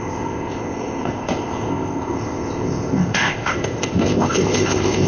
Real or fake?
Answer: fake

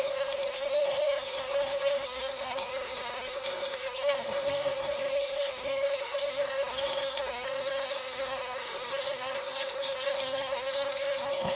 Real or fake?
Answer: fake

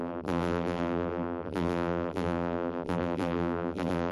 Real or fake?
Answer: fake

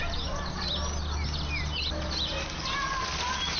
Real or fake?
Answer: real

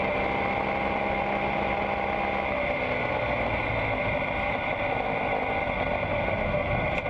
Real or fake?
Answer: real